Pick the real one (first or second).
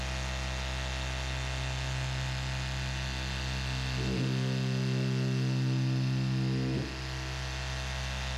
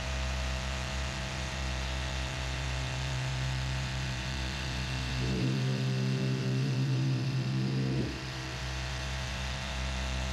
first